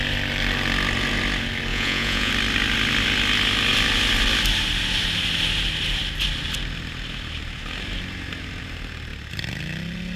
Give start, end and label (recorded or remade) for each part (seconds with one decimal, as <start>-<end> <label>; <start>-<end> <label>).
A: 0.0-1.7 recorded; 1.7-2.3 remade; 2.3-10.2 recorded